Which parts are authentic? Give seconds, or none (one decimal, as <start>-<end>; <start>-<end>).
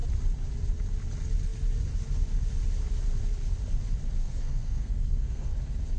0.0-4.2; 5.5-6.0